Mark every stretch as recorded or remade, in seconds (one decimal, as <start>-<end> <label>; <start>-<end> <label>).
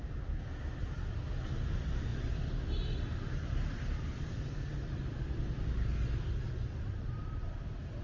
0.0-8.0 recorded